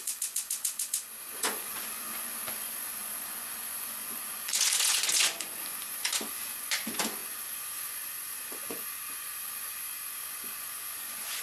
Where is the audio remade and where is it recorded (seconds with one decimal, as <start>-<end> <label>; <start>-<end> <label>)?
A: 0.0-11.4 remade